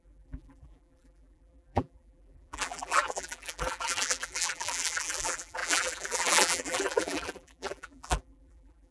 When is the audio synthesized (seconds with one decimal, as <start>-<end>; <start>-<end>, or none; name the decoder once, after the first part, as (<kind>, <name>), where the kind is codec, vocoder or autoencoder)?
0.0-8.9 (vocoder, BigVGAN v2)